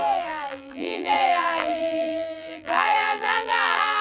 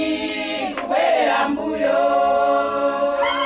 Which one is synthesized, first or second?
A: first